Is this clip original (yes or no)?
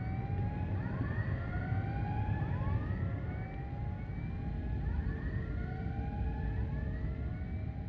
yes